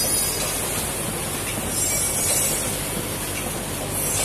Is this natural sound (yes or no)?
yes